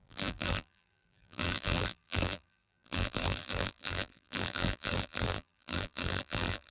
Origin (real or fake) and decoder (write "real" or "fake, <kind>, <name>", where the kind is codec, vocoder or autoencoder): fake, vocoder, BigVGAN v2